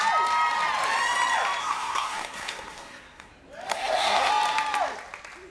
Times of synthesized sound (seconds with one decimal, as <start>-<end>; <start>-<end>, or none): 1.6-3.3; 3.7-4.3